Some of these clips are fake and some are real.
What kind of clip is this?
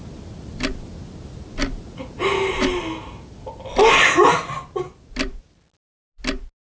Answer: real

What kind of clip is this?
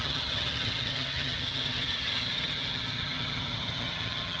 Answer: fake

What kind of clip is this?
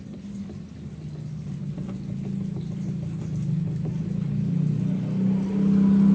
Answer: real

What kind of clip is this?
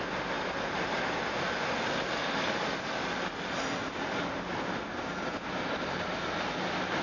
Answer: real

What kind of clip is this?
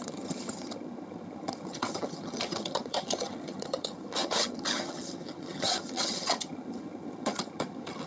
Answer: fake